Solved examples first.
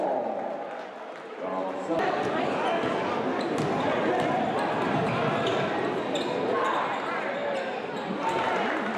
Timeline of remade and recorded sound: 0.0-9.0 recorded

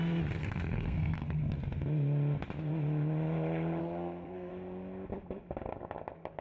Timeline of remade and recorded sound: 0.0-0.4 recorded; 0.4-1.4 remade; 1.4-3.8 recorded; 3.8-4.5 remade; 4.5-6.4 recorded

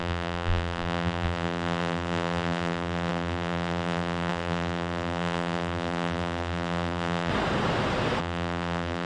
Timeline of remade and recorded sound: 0.0-7.3 remade; 7.3-8.2 recorded; 8.2-9.1 remade

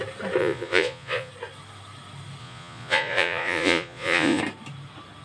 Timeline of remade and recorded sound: 0.0-0.4 recorded; 0.4-1.3 remade; 1.3-2.4 recorded; 2.4-4.4 remade; 4.4-5.2 recorded

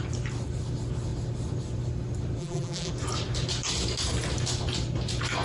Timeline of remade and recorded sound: 0.0-2.4 recorded; 2.4-2.9 remade; 2.9-5.4 recorded

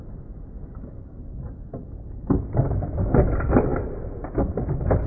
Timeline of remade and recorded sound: 0.0-3.7 recorded; 3.7-4.6 remade; 4.6-5.1 recorded

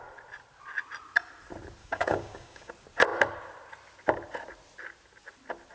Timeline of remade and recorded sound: 0.0-1.8 recorded; 1.8-2.7 remade; 2.7-5.7 recorded

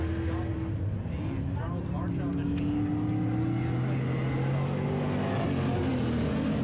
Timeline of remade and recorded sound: 0.0-6.6 recorded